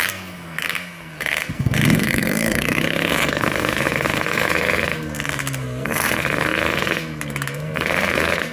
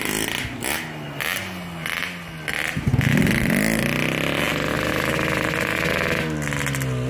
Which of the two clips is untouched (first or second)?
second